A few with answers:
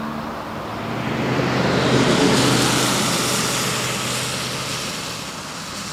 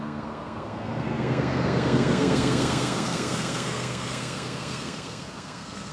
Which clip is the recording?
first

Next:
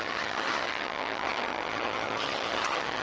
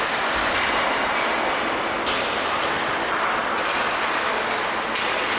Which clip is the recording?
second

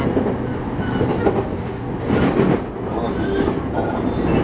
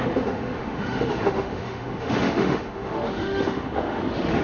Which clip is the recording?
first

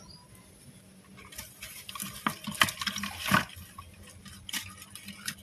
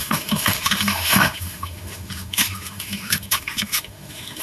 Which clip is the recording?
first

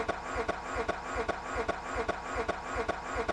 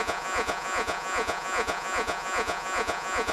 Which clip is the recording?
first